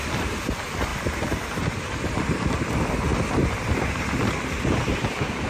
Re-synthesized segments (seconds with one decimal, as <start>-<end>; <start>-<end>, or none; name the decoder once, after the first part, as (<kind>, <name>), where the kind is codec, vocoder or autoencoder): 0.9-2.2 (vocoder, BigVGAN v2); 3.1-3.7